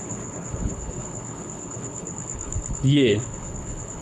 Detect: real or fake fake